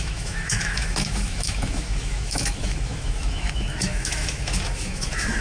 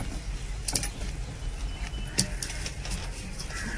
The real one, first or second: second